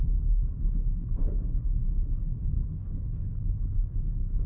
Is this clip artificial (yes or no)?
yes